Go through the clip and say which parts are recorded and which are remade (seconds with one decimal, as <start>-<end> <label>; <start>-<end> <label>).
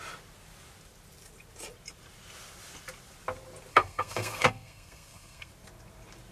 0.0-3.7 recorded; 3.7-5.5 remade; 5.5-6.3 recorded